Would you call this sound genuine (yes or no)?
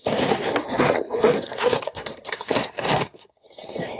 no